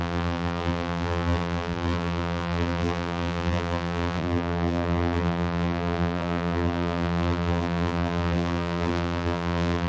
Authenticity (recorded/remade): remade